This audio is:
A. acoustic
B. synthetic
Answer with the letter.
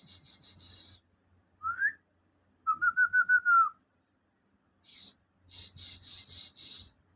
A